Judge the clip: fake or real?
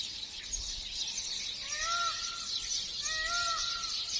real